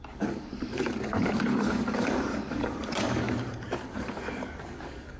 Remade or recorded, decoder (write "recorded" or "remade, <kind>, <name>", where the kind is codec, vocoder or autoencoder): remade, codec, DAC